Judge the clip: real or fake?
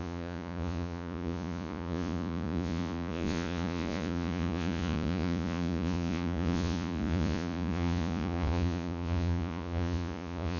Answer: fake